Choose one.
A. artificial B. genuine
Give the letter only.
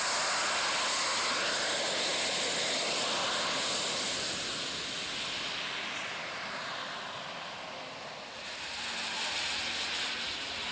B